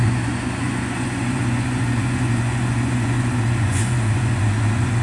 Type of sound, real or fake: fake